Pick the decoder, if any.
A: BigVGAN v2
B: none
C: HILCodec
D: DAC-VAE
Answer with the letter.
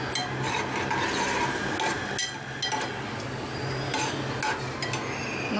B